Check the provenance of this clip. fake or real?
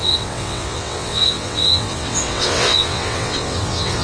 fake